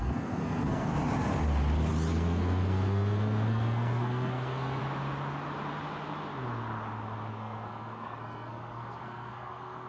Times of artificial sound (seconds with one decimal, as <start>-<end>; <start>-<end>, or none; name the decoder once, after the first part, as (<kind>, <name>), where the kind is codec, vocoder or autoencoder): 0.0-0.9 (codec, SNAC); 2.1-4.8; 7.3-9.9